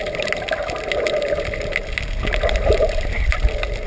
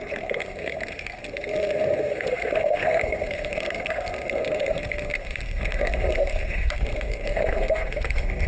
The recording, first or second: first